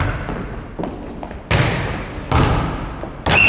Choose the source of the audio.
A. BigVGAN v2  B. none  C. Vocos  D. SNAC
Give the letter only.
B